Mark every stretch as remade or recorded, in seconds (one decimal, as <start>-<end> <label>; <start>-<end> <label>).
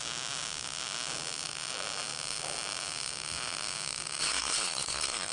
0.0-4.2 recorded; 4.2-5.3 remade